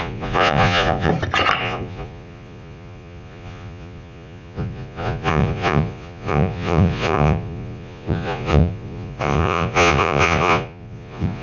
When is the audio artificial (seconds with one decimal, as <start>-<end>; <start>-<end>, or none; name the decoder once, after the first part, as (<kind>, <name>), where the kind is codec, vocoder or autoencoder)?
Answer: 0.0-1.1 (vocoder, Vocos); 1.6-11.4